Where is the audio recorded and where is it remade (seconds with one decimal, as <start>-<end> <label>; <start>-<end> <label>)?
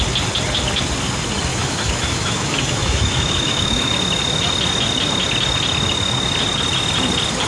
0.0-1.5 recorded; 1.5-3.9 remade; 3.9-7.5 recorded